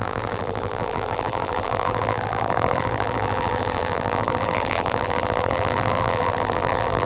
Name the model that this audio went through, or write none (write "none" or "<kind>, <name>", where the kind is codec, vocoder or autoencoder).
vocoder, BigVGAN v2